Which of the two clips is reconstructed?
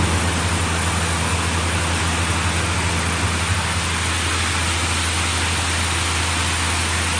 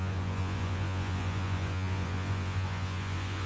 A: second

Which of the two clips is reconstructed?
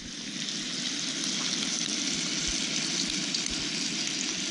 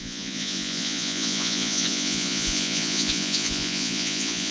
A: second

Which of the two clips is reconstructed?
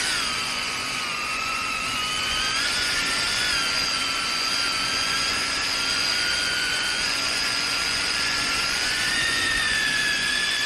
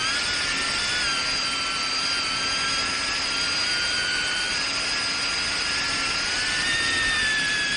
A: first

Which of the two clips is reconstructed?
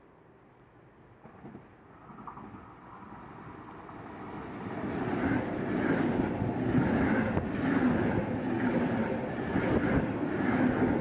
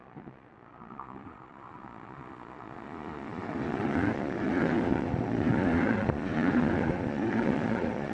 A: second